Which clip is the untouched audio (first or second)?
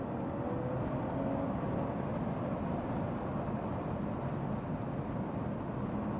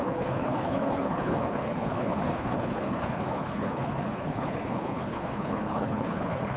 first